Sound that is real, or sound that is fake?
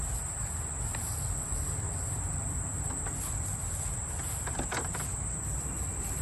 real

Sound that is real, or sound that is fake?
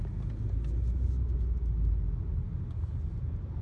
real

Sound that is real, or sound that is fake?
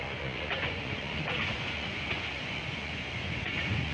fake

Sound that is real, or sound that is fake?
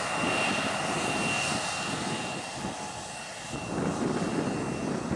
real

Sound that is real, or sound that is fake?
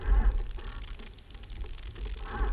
real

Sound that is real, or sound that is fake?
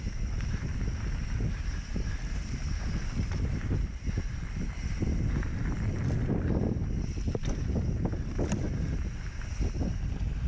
real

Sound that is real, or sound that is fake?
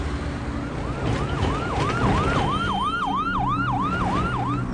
real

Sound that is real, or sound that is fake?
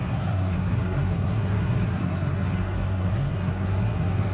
fake